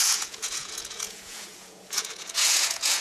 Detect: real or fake fake